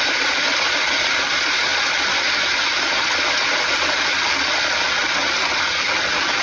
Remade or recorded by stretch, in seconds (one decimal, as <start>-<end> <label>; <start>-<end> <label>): 0.0-6.4 recorded